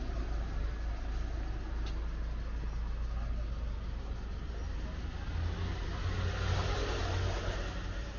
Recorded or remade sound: recorded